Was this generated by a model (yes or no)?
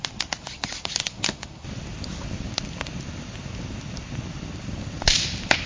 no